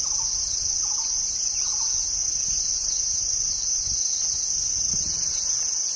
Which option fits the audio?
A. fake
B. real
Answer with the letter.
B